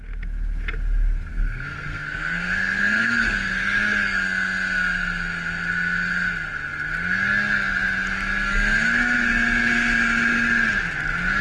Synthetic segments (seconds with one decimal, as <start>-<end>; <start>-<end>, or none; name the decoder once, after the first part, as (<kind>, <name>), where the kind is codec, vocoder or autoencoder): 1.3-3.8 (codec, SNAC)

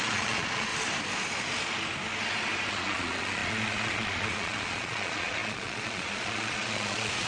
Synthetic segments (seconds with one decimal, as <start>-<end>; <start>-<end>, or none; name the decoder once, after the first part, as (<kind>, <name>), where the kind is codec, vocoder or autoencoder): 0.0-0.7 (vocoder, Vocos); 2.7-7.3

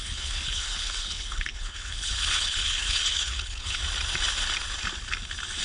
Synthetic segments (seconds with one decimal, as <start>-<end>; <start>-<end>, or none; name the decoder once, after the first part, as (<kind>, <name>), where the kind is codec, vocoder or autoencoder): 0.0-3.8 (codec, HILCodec)

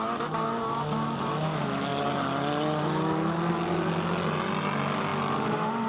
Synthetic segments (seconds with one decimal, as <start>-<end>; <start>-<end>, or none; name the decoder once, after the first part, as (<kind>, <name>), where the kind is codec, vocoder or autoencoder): none

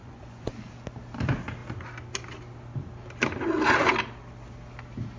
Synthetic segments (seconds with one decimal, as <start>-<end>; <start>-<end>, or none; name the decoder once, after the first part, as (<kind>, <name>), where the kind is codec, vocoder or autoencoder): 0.0-0.7 (vocoder, Vocos)

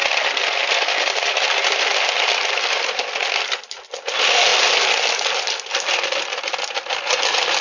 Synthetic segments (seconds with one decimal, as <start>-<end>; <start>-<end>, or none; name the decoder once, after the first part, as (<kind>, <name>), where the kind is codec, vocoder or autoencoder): none

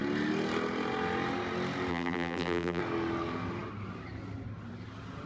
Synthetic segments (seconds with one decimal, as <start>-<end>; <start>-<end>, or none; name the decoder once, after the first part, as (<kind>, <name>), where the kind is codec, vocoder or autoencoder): 1.9-2.8 (vocoder, BigVGAN v2)